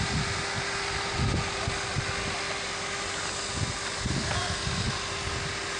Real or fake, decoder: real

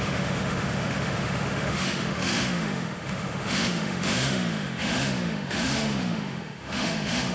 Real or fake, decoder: fake, autoencoder, DAC-VAE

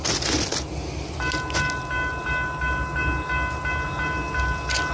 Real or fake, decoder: real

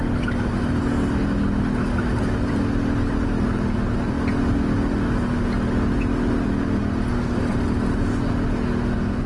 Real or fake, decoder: real